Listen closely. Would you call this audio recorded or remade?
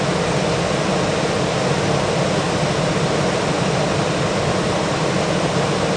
recorded